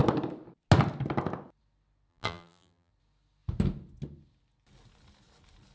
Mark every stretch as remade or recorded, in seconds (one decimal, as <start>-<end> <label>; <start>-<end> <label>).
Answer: 0.0-2.1 recorded; 2.1-2.9 remade; 2.9-5.7 recorded

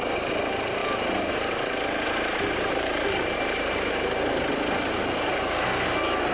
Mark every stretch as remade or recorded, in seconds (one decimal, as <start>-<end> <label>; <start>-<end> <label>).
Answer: 0.0-0.8 recorded; 0.8-4.5 remade; 4.5-6.3 recorded

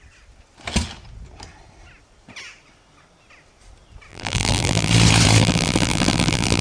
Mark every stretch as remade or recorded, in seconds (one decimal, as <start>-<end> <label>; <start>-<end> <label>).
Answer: 0.0-4.1 recorded; 4.1-4.9 remade; 4.9-5.4 recorded; 5.4-6.6 remade

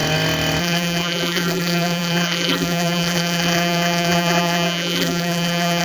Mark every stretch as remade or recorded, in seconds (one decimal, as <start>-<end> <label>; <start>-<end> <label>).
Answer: 0.0-0.6 recorded; 0.6-5.8 remade

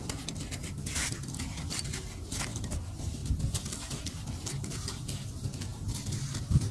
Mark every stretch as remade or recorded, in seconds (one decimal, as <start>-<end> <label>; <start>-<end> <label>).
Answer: 0.0-3.2 remade; 3.2-4.9 recorded; 4.9-5.7 remade; 5.7-6.2 recorded; 6.2-6.7 remade

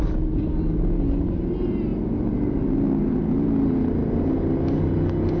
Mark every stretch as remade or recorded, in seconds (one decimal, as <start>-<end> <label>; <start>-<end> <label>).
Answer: 0.0-5.4 recorded